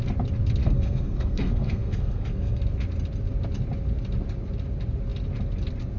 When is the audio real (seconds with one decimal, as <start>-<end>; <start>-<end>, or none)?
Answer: 0.0-0.6; 2.6-6.0